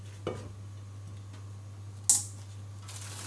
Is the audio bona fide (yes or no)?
yes